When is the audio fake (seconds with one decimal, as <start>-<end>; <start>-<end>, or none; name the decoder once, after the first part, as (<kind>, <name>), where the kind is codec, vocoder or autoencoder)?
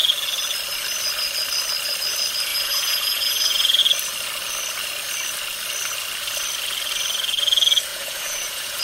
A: 2.5-3.8 (vocoder, Vocos); 7.9-8.8